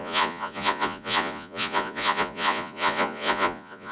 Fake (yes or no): yes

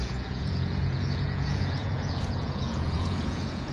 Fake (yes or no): yes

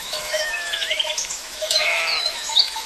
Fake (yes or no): yes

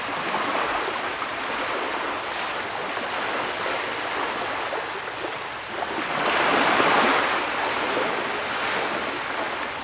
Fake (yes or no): no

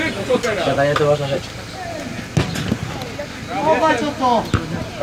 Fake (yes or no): no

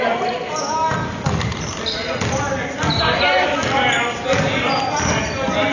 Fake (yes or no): no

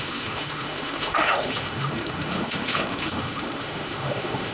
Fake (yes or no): yes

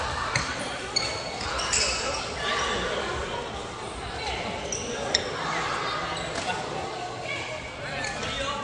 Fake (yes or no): no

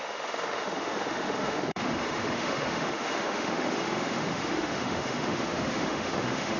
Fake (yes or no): yes